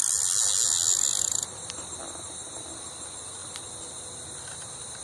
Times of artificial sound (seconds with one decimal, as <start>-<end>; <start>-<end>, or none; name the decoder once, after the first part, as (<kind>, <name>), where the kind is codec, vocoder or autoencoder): none